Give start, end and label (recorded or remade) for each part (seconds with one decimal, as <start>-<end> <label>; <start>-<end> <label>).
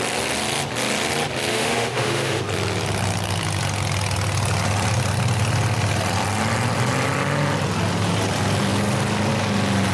0.0-1.5 recorded; 1.5-2.4 remade; 2.4-9.9 recorded